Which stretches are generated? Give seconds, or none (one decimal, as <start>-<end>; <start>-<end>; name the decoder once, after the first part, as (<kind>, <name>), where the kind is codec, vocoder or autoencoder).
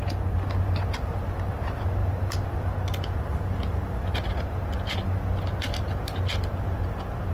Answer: none